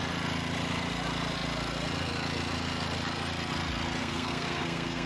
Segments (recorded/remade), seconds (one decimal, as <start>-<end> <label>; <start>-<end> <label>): 0.0-4.0 recorded; 4.0-5.1 remade